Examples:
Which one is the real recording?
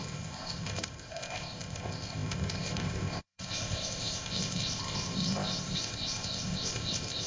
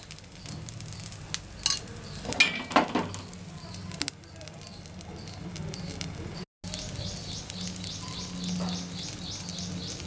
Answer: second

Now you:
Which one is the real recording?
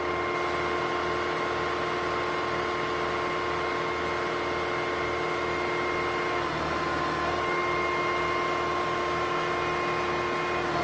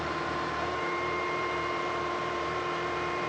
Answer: first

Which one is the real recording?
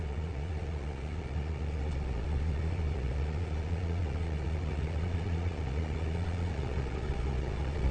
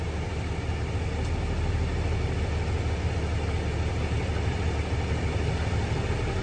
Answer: second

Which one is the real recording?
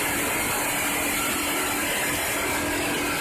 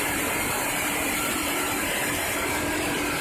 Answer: first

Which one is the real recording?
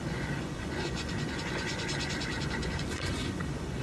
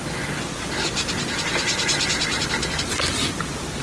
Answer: second